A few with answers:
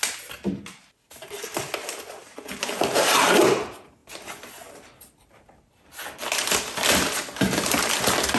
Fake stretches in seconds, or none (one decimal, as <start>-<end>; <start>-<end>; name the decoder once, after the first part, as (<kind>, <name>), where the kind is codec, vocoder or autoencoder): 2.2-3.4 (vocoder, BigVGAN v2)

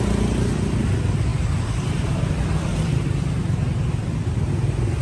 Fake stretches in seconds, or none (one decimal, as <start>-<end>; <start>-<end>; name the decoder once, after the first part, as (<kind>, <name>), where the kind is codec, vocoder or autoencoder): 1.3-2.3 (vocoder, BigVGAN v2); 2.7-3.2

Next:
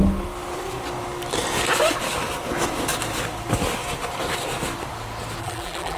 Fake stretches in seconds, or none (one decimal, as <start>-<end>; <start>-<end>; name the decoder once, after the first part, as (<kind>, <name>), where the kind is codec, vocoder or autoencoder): 5.4-6.0 (vocoder, BigVGAN v2)